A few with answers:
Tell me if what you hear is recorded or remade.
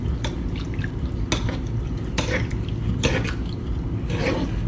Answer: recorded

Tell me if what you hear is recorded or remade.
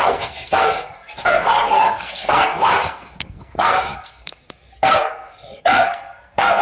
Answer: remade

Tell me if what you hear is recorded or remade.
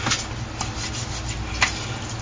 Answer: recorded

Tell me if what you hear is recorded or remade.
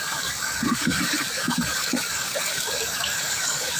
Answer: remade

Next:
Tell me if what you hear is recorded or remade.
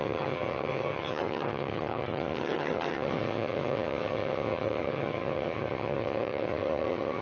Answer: remade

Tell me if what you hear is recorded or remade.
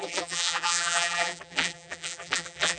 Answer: remade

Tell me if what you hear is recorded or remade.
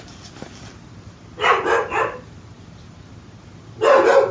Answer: recorded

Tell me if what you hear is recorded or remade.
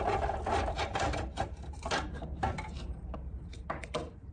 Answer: remade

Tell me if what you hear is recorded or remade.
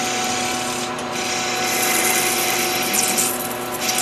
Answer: recorded